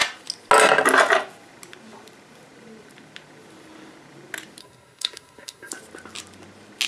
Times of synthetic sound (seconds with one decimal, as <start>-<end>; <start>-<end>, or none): 4.6-5.7

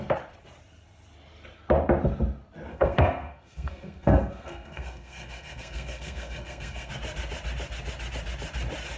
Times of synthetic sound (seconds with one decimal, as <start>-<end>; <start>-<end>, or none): 2.7-6.9

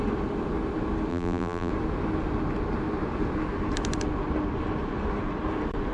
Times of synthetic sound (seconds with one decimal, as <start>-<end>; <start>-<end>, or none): 1.1-1.7

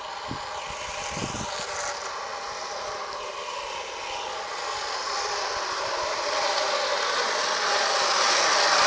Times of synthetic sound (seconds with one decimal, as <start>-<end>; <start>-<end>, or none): none

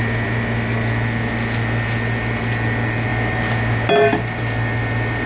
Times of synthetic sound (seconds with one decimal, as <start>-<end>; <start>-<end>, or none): none

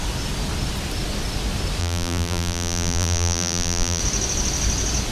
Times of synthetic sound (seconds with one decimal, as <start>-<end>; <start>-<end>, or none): 1.8-4.0

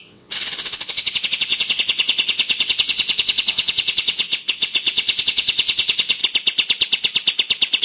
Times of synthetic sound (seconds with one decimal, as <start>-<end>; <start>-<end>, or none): 0.0-6.2